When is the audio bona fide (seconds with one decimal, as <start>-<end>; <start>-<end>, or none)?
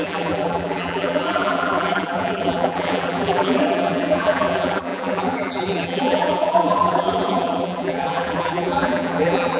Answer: none